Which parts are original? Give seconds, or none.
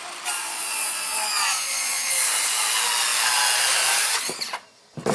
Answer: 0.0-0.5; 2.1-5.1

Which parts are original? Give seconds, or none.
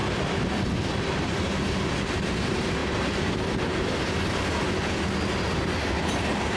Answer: 0.0-6.6